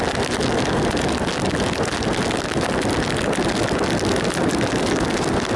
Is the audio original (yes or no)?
yes